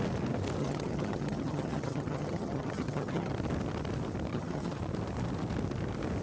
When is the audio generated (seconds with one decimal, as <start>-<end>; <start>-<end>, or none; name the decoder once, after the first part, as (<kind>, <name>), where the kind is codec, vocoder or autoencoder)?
0.6-3.3 (vocoder, HiFi-GAN); 4.3-4.8